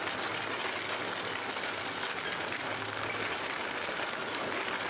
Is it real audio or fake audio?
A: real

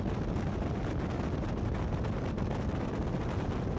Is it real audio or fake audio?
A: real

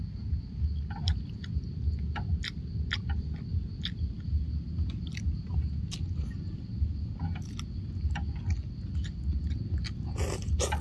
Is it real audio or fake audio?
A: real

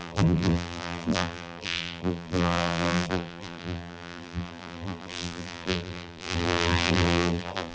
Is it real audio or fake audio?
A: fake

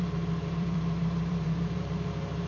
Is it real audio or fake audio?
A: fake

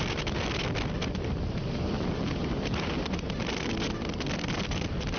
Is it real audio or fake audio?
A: fake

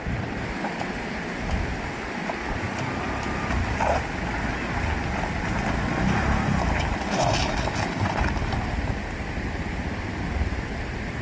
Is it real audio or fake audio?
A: real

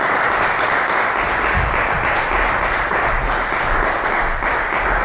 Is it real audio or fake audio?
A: real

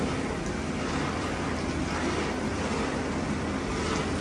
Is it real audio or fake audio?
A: real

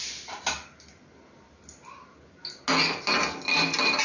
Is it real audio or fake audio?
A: real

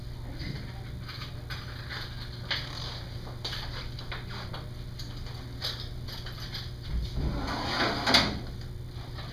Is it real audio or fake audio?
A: real